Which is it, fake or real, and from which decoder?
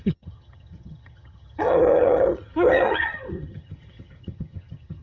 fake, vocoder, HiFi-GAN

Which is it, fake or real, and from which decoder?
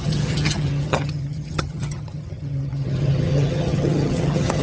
fake, vocoder, HiFi-GAN